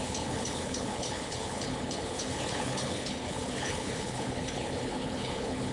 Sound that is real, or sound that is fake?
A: fake